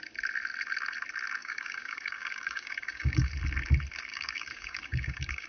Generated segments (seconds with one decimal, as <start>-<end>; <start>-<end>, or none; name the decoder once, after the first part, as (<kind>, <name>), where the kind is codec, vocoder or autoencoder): 1.4-3.3 (codec, DAC); 4.1-5.5